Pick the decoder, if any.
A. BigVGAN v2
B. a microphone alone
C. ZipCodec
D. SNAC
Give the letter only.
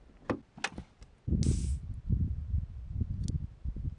B